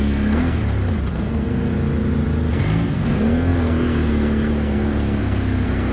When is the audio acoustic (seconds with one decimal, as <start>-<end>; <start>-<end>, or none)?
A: 0.6-1.1; 1.7-2.5

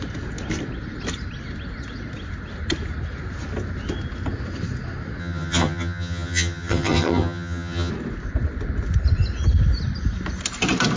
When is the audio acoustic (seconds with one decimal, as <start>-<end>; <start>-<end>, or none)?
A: 0.0-5.2; 7.9-11.0

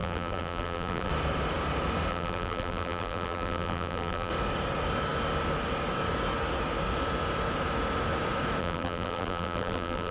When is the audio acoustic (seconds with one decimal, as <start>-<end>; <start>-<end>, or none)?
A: 1.1-2.1; 4.3-8.6